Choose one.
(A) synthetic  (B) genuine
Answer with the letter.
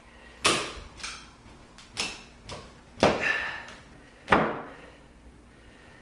B